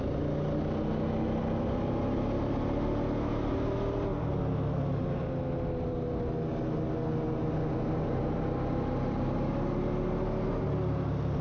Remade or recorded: recorded